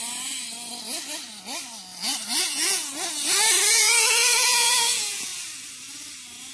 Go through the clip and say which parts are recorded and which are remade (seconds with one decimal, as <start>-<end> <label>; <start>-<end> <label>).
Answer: 0.0-2.4 recorded; 2.4-2.9 remade; 2.9-3.7 recorded; 3.7-5.3 remade; 5.3-6.5 recorded